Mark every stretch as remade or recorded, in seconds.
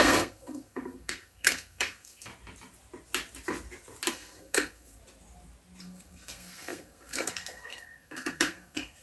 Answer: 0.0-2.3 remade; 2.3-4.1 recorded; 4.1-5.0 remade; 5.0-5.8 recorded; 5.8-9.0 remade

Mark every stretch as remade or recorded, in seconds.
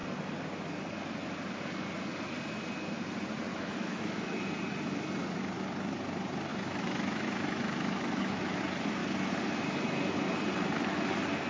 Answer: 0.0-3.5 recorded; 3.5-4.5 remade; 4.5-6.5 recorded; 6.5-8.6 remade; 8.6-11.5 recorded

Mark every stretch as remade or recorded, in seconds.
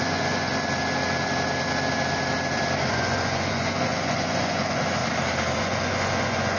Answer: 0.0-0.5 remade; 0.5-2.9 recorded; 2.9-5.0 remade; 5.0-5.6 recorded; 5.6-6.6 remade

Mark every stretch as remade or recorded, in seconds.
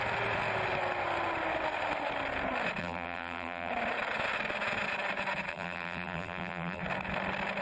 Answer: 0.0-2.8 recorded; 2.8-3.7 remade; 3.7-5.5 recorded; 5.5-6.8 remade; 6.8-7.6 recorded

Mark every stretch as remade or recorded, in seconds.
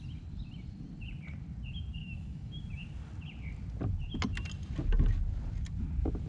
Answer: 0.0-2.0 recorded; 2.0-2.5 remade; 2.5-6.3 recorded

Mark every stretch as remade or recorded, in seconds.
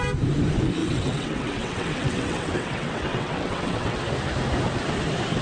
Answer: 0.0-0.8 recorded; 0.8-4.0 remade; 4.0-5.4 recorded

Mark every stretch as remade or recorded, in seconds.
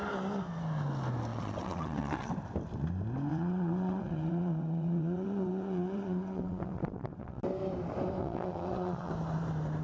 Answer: 0.0-1.3 recorded; 1.3-2.3 remade; 2.3-3.3 recorded; 3.3-7.4 remade; 7.4-8.2 recorded; 8.2-9.1 remade; 9.1-9.8 recorded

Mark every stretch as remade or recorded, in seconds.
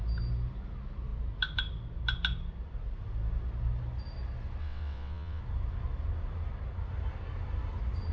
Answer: 0.0-4.6 recorded; 4.6-5.4 remade; 5.4-8.1 recorded